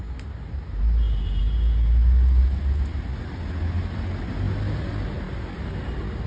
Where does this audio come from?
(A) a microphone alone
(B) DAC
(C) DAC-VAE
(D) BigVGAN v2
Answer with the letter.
A